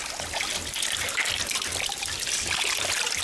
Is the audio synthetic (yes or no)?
no